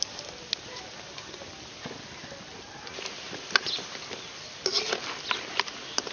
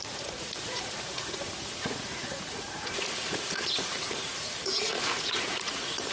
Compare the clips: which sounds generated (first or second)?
second